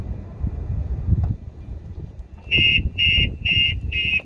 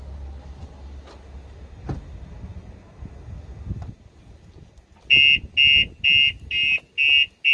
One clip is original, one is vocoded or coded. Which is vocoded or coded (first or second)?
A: first